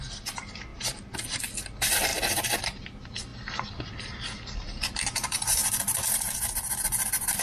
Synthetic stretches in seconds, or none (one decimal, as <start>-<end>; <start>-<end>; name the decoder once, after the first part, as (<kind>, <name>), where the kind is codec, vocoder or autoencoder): 0.0-0.7 (vocoder, BigVGAN v2); 1.4-2.1; 2.6-5.6; 7.0-7.4